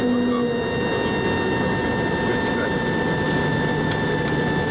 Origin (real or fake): real